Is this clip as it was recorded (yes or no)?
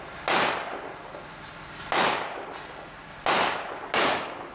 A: yes